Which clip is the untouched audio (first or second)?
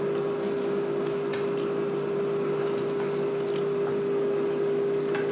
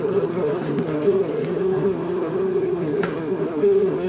first